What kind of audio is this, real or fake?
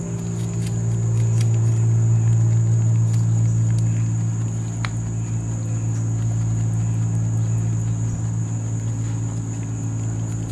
real